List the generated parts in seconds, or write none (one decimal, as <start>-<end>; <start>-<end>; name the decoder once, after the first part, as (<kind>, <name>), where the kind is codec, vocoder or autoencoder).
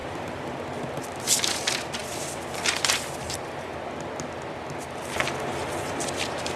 0.0-3.7 (vocoder, BigVGAN v2); 5.7-6.6